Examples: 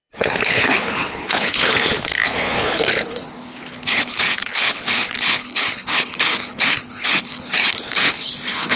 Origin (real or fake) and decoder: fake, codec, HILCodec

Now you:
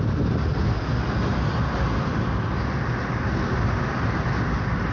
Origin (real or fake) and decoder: real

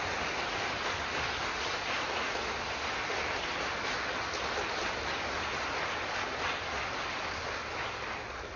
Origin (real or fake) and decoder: real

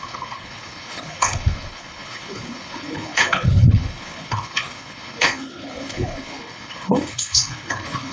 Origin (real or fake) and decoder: fake, codec, HILCodec